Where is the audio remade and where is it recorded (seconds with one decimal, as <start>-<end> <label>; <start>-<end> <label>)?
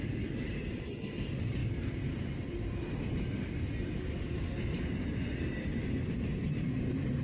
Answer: 0.0-7.2 recorded